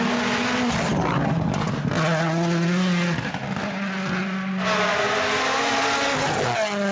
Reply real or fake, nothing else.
real